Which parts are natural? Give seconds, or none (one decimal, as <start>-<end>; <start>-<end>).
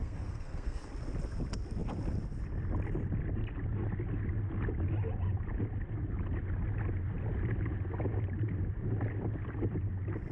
0.9-10.3